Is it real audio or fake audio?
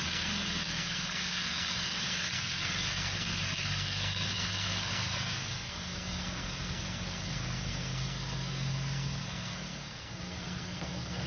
fake